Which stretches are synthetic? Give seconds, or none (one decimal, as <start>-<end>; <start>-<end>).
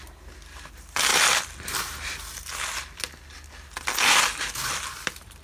none